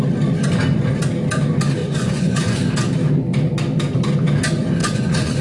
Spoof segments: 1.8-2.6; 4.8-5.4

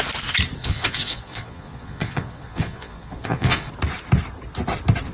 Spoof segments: 0.6-3.7

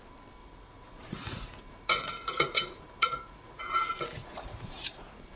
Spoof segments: 0.4-3.6; 4.3-5.4

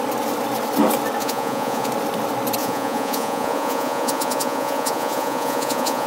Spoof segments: 1.2-1.9; 2.6-6.1

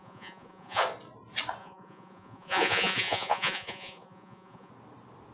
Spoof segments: 0.0-0.8; 1.6-4.7

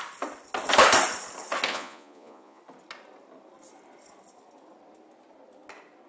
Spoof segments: 1.7-2.6

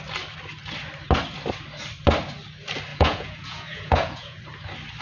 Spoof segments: 2.9-4.4

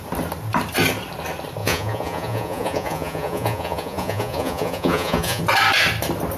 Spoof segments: 1.6-5.4